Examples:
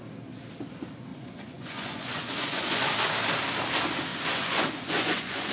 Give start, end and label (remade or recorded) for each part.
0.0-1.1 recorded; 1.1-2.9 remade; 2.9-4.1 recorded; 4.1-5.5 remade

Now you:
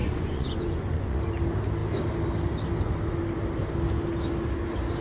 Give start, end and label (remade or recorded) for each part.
0.0-1.2 remade; 1.2-5.0 recorded

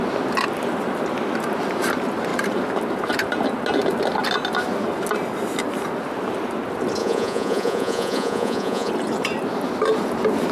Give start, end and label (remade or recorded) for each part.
0.0-7.0 recorded; 7.0-8.9 remade; 8.9-10.5 recorded

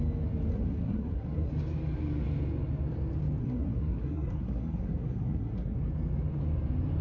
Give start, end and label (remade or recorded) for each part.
0.0-0.5 recorded; 0.5-1.5 remade; 1.5-3.4 recorded; 3.4-5.8 remade; 5.8-7.0 recorded

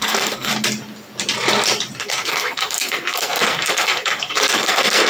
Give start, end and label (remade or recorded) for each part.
0.0-0.5 remade; 0.5-2.0 recorded; 2.0-5.1 remade

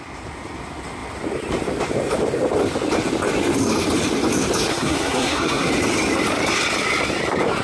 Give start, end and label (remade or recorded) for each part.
0.0-4.7 recorded; 4.7-5.7 remade; 5.7-7.6 recorded

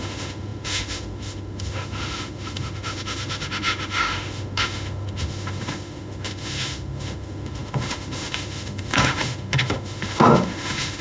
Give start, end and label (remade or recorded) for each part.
0.0-11.0 remade